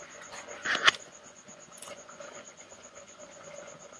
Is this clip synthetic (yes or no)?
yes